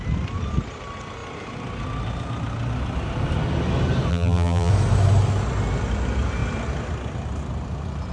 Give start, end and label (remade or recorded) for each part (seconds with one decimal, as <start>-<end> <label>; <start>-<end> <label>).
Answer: 0.0-4.1 recorded; 4.1-4.7 remade; 4.7-8.1 recorded